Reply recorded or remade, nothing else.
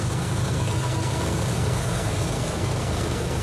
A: remade